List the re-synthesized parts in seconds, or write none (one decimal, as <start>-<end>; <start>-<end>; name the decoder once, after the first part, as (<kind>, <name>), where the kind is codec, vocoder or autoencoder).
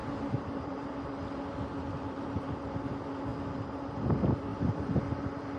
0.0-0.9 (vocoder, BigVGAN v2); 4.5-5.0